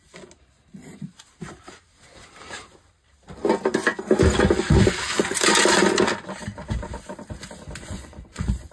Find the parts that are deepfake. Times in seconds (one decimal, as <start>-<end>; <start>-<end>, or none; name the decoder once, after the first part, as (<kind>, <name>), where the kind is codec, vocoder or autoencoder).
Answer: 7.8-8.7 (vocoder, Vocos)

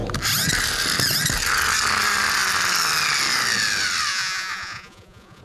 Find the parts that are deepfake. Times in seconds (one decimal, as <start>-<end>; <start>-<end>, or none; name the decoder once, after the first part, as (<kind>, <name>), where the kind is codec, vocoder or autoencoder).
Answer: 4.1-5.4 (vocoder, Vocos)

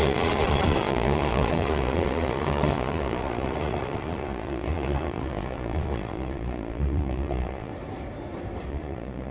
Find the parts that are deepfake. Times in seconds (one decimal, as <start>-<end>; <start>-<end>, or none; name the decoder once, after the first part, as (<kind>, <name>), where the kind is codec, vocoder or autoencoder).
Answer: 0.0-7.7 (vocoder, Vocos); 8.7-9.3

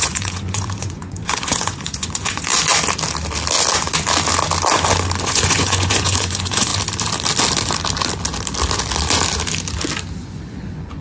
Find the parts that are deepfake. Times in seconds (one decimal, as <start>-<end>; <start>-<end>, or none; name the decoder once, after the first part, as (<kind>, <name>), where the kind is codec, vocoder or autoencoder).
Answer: 0.0-2.5 (vocoder, Vocos); 5.2-6.7; 10.3-11.0